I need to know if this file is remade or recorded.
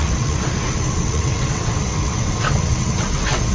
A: remade